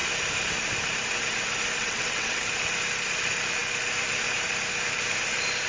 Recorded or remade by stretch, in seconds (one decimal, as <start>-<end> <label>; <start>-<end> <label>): 0.0-1.8 recorded; 1.8-2.4 remade; 2.4-5.7 recorded